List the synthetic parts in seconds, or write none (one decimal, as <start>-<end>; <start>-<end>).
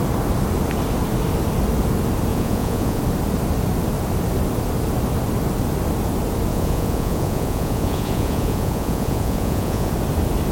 2.3-3.0; 6.5-9.9